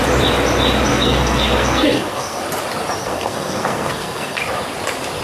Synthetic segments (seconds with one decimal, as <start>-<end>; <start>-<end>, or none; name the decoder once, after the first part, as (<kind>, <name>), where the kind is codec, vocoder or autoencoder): 0.9-2.4 (codec, SNAC); 3.0-4.4